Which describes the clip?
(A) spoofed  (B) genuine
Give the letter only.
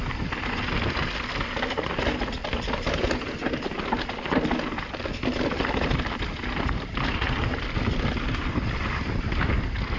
B